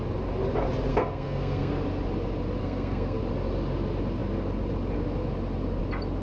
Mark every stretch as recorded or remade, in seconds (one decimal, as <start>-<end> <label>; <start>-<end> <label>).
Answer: 0.0-0.9 recorded; 0.9-1.7 remade; 1.7-2.6 recorded; 2.6-3.2 remade; 3.2-6.2 recorded